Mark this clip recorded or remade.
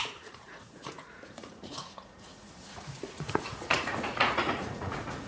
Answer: remade